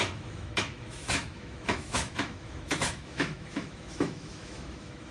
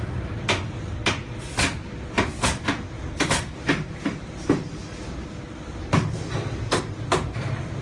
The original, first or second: second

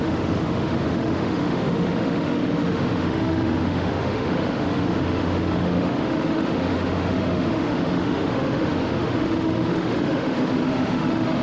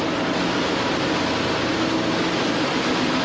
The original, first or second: second